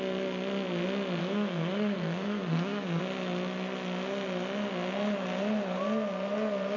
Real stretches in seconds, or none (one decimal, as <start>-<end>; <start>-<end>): 0.0-1.2; 3.0-6.8